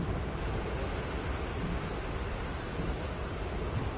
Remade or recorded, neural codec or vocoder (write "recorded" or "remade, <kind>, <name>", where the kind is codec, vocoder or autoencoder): recorded